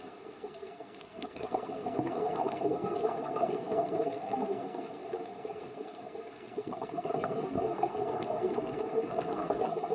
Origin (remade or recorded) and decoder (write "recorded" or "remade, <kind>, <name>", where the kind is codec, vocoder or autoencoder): remade, codec, SNAC